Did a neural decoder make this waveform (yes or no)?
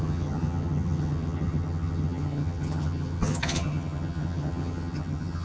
yes